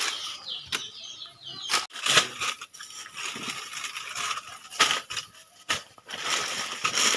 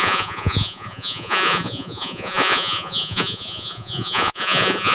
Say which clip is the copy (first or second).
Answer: second